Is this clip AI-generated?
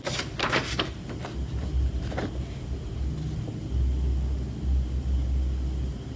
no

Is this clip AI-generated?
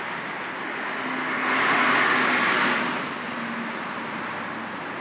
no